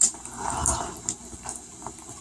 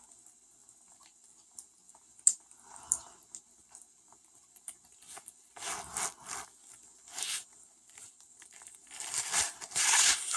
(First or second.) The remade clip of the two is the first